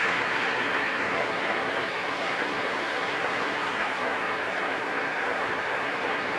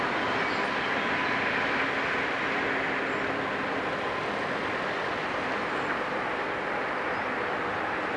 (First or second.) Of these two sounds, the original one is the second